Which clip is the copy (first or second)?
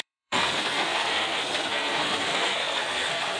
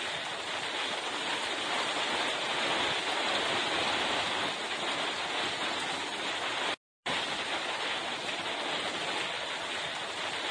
first